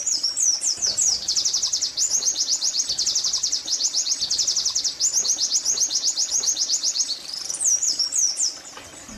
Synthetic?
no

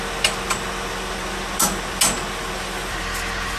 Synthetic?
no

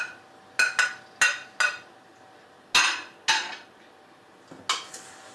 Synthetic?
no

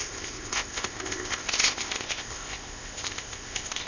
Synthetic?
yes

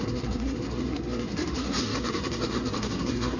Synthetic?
yes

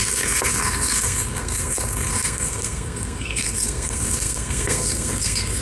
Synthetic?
yes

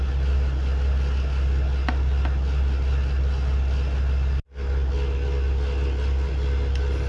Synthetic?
no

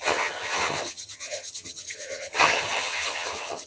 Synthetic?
yes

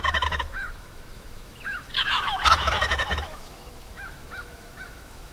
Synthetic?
yes